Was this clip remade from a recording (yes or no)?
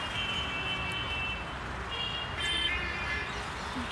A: no